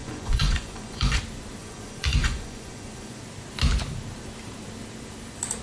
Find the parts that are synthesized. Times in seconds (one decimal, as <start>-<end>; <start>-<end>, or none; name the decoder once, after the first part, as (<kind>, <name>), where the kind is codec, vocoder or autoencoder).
0.0-1.2 (vocoder, Vocos); 1.6-3.2